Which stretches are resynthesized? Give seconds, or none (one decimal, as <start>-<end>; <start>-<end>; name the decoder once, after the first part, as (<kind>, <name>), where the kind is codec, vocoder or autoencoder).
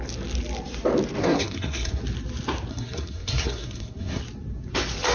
1.2-2.0 (codec, SNAC); 2.7-4.2